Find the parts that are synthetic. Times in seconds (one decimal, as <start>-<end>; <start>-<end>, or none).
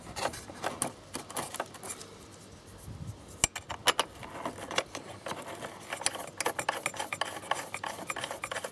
none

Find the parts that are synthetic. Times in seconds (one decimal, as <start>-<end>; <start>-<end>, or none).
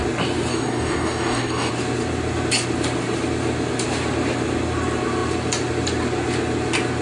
0.5-1.7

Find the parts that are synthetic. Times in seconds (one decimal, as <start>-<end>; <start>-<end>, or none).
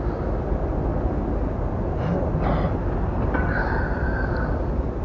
none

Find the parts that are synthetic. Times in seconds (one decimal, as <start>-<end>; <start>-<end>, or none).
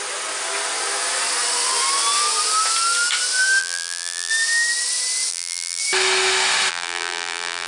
3.6-4.3; 5.3-5.8; 6.7-7.7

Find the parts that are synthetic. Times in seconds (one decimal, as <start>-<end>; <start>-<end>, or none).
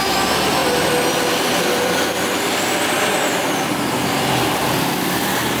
none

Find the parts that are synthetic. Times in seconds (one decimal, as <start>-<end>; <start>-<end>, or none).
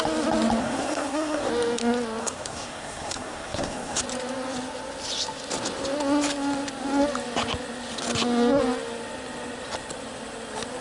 0.6-1.5; 2.2-4.0